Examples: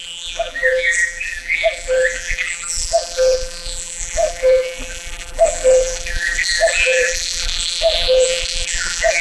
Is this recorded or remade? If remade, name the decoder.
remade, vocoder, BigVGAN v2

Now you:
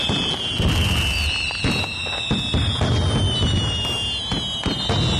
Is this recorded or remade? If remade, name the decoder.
recorded